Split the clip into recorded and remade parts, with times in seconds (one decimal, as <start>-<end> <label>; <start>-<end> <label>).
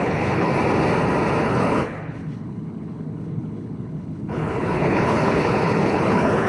0.0-0.5 remade; 0.5-1.4 recorded; 1.4-6.5 remade